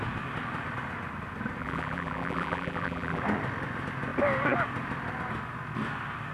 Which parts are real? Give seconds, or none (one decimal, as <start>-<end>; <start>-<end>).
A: 0.0-1.6; 3.2-6.3